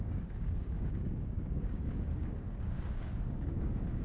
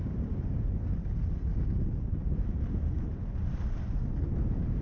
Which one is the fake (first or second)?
first